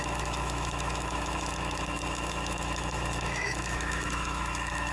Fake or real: fake